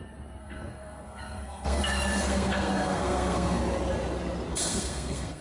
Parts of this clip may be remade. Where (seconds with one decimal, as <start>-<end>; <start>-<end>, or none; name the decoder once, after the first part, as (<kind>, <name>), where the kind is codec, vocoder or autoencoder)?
0.4-3.6 (codec, SNAC); 4.5-5.4